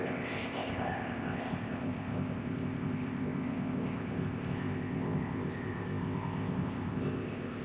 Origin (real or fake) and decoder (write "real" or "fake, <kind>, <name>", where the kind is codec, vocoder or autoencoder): fake, codec, ZipCodec